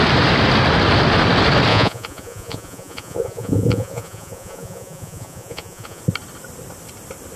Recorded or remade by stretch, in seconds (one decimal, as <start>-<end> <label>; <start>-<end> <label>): 0.0-1.7 recorded; 1.7-6.0 remade; 6.0-7.4 recorded